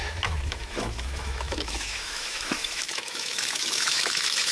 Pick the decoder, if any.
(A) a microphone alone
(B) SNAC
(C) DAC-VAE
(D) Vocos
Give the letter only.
C